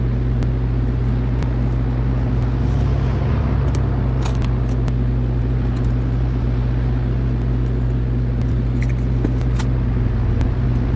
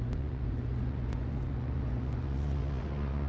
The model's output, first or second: second